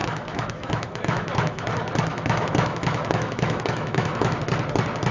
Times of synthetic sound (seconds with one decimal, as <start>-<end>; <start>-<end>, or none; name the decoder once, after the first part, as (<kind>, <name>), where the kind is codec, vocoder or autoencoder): 0.0-1.7 (autoencoder, DAC-VAE); 2.1-4.4